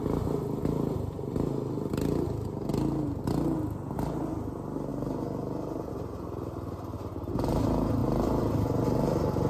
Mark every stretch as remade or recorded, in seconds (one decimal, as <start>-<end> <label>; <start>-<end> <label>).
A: 0.0-8.0 recorded; 8.0-9.5 remade